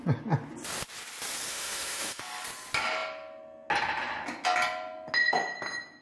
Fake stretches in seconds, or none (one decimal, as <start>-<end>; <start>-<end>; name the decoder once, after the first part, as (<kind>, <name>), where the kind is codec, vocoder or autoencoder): 1.5-2.2 (autoencoder, DAC-VAE)